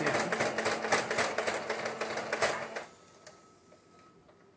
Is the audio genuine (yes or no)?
yes